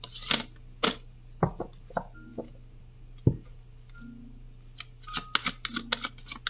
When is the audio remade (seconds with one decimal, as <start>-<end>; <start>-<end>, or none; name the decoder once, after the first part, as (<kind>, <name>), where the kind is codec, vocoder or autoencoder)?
none